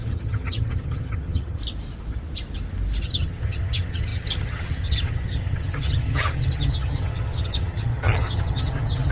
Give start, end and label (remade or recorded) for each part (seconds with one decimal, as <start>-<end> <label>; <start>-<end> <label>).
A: 0.0-1.6 remade; 1.6-3.0 recorded; 3.0-9.1 remade